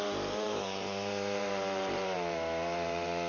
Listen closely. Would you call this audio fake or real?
fake